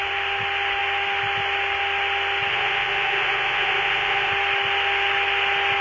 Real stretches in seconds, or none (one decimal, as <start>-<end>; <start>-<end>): 0.0-2.5; 4.3-5.8